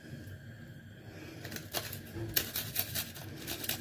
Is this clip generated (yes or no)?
no